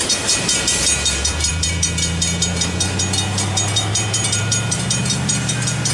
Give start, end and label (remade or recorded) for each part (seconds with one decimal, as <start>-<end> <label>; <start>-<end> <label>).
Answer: 0.0-5.9 remade